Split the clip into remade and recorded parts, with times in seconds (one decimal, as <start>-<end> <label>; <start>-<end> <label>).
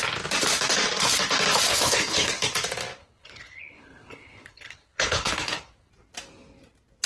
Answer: 0.0-1.7 recorded; 1.7-2.3 remade; 2.3-3.0 recorded; 3.0-5.9 remade; 5.9-7.1 recorded